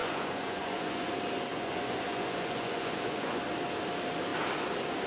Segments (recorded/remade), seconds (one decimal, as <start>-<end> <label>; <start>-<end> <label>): 0.0-1.1 remade; 1.1-1.5 recorded; 1.5-3.4 remade; 3.4-5.1 recorded